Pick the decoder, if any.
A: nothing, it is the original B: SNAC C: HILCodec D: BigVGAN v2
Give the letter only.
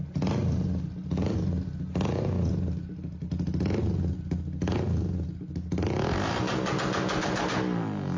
A